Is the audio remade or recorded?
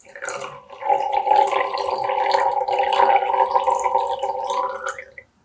recorded